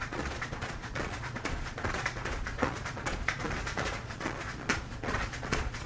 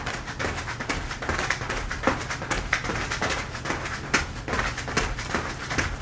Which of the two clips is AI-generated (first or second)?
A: first